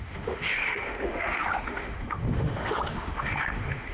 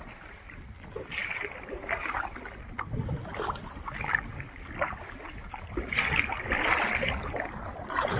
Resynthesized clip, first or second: first